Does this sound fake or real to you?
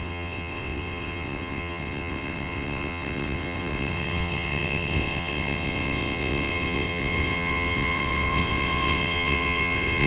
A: fake